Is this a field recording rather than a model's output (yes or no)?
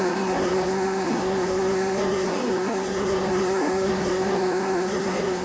no